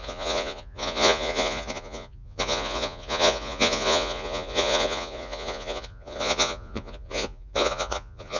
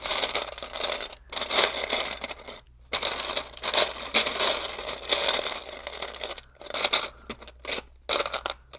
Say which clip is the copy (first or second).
first